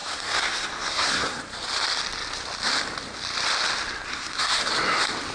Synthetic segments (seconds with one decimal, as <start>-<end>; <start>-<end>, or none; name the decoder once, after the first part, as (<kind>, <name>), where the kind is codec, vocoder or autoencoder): 0.0-1.4 (codec, SNAC); 4.1-4.7